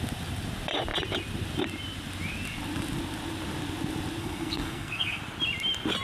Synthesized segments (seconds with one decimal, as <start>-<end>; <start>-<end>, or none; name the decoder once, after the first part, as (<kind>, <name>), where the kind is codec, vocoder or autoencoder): 4.2-5.2 (codec, SNAC)